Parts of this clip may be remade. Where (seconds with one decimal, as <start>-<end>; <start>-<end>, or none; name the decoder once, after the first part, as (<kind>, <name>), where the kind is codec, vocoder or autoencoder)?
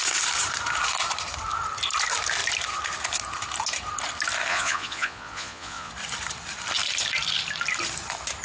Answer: 4.5-5.9 (vocoder, Vocos)